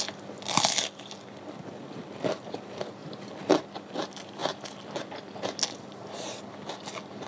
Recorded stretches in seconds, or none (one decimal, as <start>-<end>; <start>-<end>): 0.0-3.0; 3.6-7.3